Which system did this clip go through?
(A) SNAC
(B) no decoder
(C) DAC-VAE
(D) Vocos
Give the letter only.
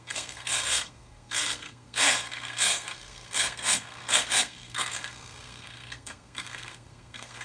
A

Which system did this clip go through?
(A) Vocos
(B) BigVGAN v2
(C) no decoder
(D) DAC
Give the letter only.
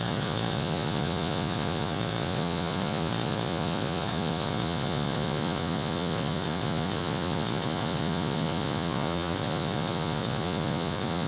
A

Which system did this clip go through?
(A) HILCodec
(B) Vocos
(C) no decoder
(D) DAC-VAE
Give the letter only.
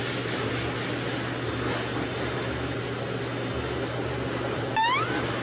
C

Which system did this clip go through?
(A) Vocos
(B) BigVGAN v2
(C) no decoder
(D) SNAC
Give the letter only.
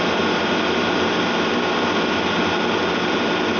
C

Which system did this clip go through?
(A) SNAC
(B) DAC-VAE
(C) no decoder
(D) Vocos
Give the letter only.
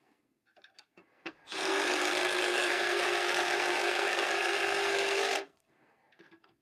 A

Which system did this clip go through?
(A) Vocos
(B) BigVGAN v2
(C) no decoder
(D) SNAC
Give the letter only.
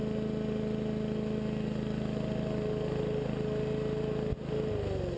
C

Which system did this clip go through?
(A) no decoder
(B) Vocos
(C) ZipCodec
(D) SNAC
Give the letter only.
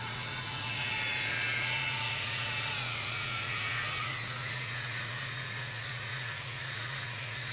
B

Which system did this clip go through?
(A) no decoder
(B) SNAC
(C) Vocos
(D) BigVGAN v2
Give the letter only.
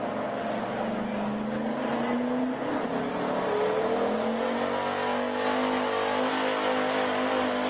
A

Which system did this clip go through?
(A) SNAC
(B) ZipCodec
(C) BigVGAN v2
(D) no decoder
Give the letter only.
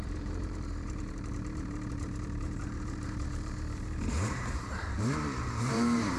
C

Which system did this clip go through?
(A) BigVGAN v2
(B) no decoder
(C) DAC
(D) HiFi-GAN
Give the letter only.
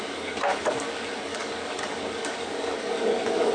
C